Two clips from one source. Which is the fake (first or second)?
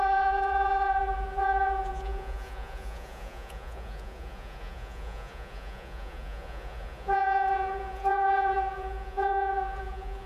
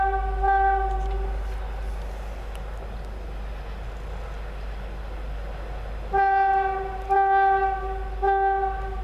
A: first